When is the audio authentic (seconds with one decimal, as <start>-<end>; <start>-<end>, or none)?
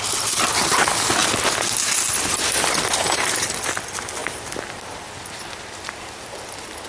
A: 0.0-6.9